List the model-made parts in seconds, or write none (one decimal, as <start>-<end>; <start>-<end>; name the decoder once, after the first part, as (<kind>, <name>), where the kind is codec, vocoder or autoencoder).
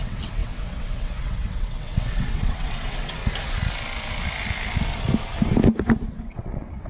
0.0-3.2 (vocoder, WaveNeXt); 6.1-6.9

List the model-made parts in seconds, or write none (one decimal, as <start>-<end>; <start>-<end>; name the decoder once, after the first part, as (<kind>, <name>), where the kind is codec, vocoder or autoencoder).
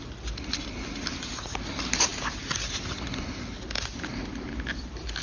none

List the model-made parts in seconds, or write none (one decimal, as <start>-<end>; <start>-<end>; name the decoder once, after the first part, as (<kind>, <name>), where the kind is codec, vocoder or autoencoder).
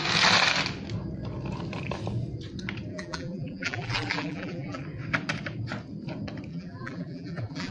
2.9-4.8 (vocoder, BigVGAN v2); 6.5-7.7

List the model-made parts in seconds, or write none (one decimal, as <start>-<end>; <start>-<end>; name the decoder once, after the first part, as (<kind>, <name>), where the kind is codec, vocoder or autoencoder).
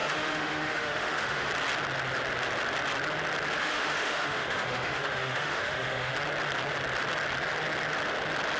0.0-1.5 (autoencoder, DAC-VAE); 3.6-6.1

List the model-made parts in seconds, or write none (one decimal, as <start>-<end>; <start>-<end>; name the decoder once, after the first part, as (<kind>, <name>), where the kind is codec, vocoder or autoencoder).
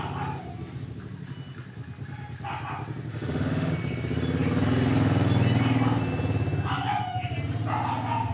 3.1-3.7 (autoencoder, DAC-VAE)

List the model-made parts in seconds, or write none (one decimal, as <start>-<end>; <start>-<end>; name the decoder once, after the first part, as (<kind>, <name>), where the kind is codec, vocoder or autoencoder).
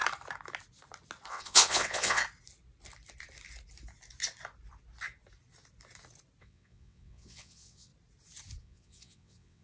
1.3-2.2 (vocoder, WaveNeXt); 6.4-7.9; 8.6-9.6